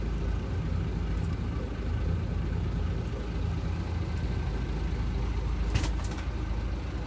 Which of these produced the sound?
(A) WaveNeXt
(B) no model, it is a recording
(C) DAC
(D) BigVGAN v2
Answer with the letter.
B